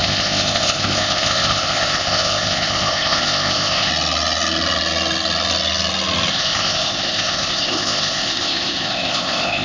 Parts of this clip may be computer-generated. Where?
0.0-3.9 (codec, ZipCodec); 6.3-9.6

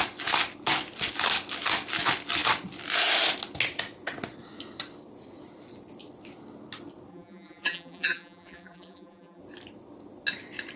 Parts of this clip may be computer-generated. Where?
7.1-9.4 (vocoder, BigVGAN v2)

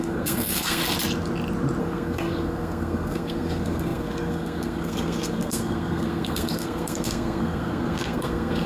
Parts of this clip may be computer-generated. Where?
0.0-0.8 (codec, SNAC); 1.8-8.7

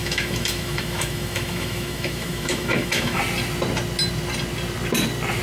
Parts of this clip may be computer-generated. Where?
0.0-3.2 (autoencoder, DAC-VAE)

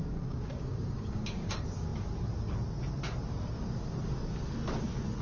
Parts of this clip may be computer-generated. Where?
0.0-1.5 (codec, DAC)

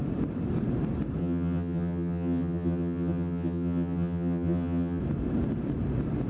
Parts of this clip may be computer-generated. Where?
1.2-5.0 (vocoder, HiFi-GAN)

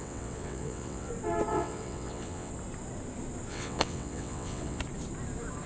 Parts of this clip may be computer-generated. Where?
0.0-1.1 (vocoder, WaveNeXt); 1.5-2.5; 3.5-4.8

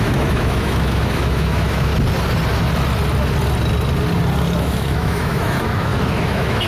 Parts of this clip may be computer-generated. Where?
0.0-1.9 (autoencoder, DAC-VAE); 4.6-6.7